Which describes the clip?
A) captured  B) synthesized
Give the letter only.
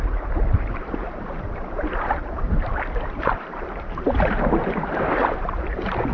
B